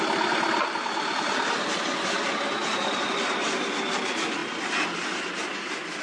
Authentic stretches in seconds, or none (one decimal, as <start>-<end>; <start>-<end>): 0.0-2.6; 3.7-6.0